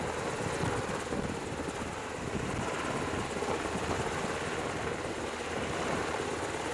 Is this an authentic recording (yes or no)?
yes